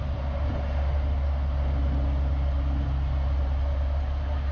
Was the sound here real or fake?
real